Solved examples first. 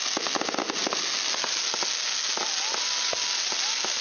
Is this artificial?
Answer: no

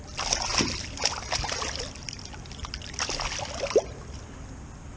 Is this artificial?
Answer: no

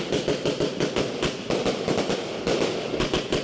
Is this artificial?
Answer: no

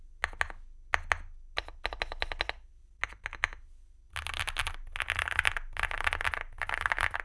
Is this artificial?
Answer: no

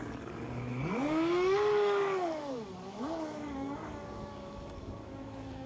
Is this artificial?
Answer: yes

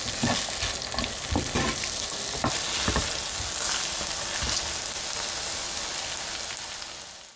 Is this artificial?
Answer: no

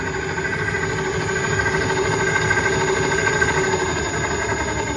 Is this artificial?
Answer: no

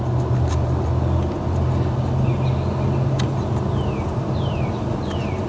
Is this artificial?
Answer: no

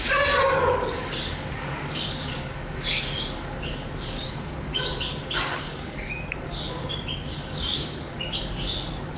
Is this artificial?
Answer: yes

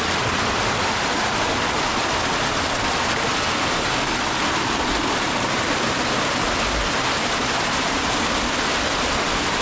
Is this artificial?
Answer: no